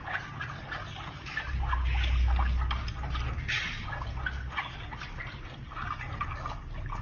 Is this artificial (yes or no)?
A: no